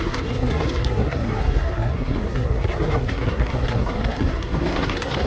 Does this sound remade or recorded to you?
remade